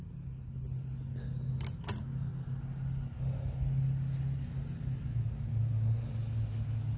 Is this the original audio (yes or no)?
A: yes